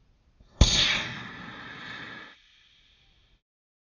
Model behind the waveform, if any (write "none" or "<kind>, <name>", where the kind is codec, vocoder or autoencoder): none